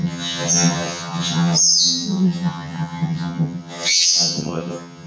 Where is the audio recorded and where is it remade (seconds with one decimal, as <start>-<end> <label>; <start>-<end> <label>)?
0.0-5.1 remade

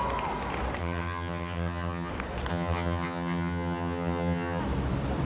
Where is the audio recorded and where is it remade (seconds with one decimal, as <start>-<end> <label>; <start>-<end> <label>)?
0.0-0.8 recorded; 0.8-2.1 remade; 2.1-2.5 recorded; 2.5-4.6 remade; 4.6-5.2 recorded

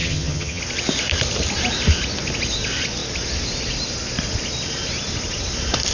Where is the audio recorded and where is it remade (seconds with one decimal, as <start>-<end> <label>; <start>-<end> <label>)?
0.0-0.6 remade; 0.6-5.9 recorded